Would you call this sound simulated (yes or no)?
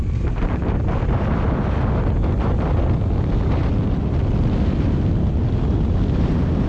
no